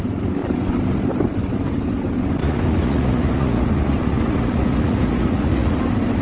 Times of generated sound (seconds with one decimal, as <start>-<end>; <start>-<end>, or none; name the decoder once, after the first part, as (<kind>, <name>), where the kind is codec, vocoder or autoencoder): 2.4-5.8 (vocoder, Vocos)